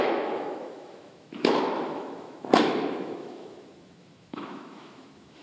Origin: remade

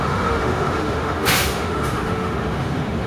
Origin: remade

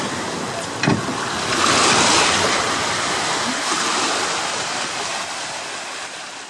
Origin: recorded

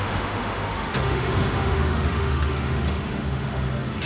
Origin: remade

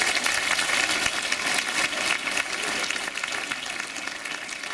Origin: recorded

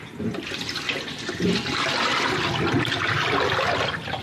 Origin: recorded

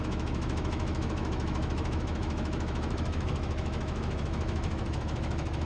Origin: remade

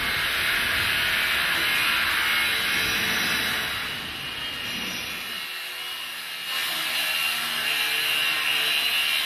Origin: recorded